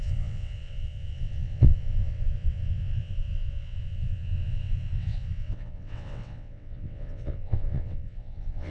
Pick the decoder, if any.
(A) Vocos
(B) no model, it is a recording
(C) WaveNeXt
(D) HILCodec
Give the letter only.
C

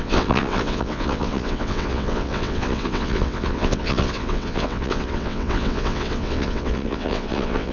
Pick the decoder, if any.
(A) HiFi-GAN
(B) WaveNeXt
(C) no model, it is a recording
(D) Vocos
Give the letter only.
B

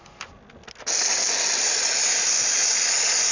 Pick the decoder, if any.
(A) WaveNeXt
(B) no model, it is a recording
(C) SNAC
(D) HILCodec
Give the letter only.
B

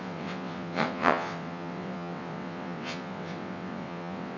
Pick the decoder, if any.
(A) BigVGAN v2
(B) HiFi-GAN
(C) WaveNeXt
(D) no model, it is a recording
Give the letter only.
C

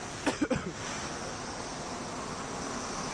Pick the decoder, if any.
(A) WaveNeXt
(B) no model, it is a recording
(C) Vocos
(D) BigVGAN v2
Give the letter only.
B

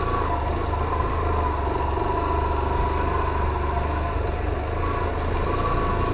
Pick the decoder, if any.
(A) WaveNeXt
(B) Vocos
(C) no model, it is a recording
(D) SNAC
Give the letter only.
C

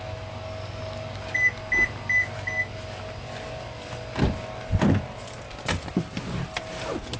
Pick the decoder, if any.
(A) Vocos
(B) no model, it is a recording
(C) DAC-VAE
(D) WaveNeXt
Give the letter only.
B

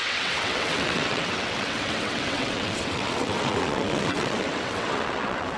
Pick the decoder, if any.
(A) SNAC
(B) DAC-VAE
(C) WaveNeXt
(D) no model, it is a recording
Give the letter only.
C